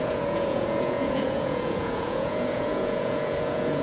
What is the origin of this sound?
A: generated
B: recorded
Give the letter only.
A